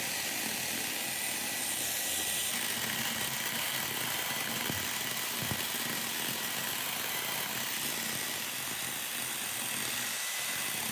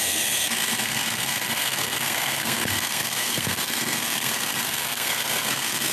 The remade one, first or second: second